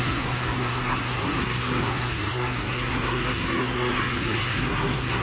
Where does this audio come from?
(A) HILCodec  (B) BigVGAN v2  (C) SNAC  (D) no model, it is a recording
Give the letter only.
C